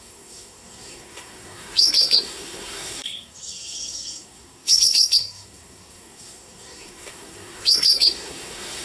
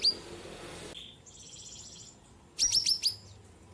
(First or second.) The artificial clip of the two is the first